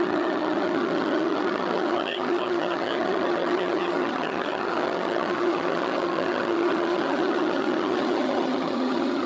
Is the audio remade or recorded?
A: remade